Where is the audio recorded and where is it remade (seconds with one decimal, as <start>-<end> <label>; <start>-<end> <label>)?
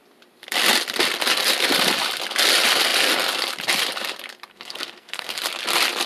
0.0-4.5 recorded; 4.5-5.4 remade; 5.4-6.1 recorded